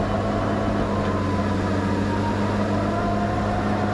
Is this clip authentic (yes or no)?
yes